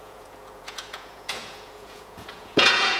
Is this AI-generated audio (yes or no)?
yes